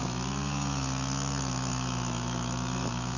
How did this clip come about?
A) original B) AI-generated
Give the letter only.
B